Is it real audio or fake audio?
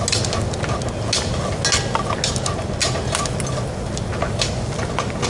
real